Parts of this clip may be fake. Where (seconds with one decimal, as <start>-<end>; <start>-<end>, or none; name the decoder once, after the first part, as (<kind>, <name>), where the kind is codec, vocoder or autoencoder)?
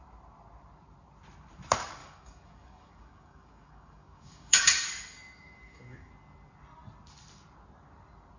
2.0-6.1 (codec, DAC)